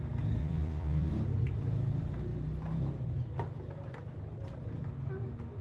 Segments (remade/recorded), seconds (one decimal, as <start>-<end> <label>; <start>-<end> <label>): 0.0-0.4 recorded; 0.4-1.1 remade; 1.1-5.6 recorded